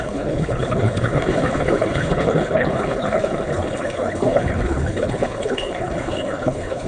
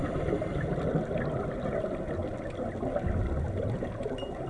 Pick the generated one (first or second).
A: first